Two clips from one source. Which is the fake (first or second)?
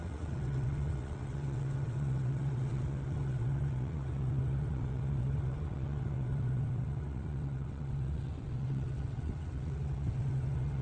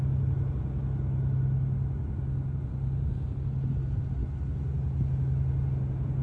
first